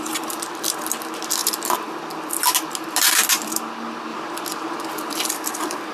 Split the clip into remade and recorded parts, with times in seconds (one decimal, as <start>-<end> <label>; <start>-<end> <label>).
0.0-1.4 recorded; 1.4-2.0 remade; 2.0-5.9 recorded